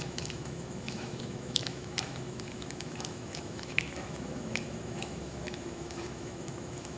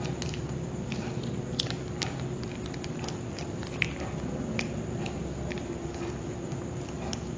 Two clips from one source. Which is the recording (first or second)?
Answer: second